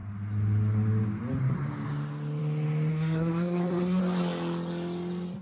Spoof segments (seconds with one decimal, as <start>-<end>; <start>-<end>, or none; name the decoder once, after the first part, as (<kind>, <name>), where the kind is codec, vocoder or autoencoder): 2.9-4.0 (codec, SNAC)